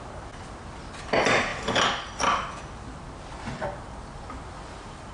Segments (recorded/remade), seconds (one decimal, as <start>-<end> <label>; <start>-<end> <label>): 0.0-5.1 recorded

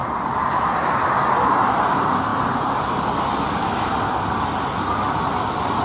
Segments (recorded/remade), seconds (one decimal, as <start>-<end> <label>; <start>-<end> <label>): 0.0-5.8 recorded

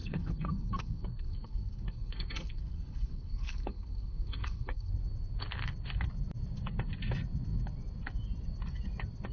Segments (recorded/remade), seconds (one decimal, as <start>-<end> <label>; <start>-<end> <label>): 0.0-4.9 remade; 4.9-9.3 recorded

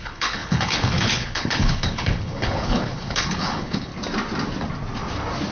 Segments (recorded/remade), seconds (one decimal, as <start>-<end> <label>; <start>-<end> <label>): 0.0-3.9 remade; 3.9-5.5 recorded